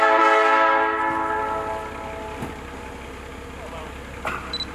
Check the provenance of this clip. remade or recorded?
recorded